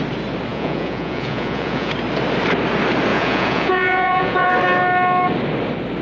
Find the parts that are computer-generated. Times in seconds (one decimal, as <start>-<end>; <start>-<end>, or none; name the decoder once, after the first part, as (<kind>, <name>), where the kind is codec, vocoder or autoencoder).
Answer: 0.5-1.9 (vocoder, Vocos); 3.1-4.5